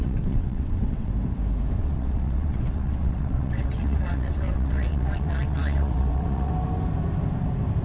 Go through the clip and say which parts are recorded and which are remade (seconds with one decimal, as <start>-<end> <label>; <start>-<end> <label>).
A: 0.0-1.1 remade; 1.1-1.8 recorded; 1.8-6.5 remade; 6.5-7.8 recorded